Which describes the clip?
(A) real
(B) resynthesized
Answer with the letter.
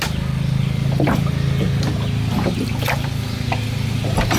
A